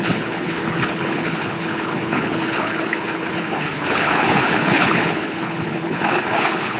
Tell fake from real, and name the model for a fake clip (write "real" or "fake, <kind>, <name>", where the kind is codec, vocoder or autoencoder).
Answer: fake, codec, HILCodec